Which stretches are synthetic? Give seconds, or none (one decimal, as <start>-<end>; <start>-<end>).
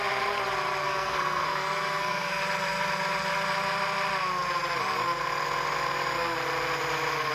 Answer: 0.8-2.4